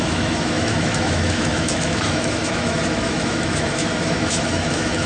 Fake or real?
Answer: fake